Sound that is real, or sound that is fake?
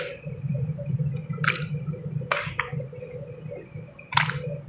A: real